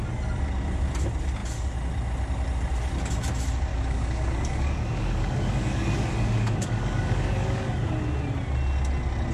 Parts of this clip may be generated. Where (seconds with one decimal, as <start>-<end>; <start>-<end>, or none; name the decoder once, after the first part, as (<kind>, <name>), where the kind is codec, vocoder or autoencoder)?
3.7-7.7 (codec, DAC)